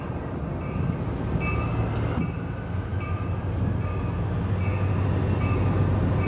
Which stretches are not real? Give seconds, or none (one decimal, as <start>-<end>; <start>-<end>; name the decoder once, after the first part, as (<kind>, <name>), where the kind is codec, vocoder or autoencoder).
none